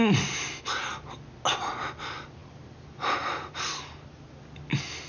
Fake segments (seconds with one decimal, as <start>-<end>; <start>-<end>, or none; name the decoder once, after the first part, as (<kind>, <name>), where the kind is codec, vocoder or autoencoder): none